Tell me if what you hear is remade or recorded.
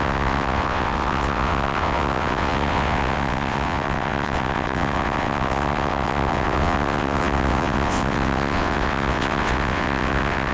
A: remade